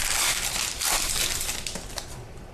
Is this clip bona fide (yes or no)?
yes